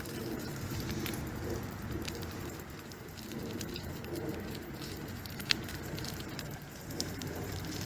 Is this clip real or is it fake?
fake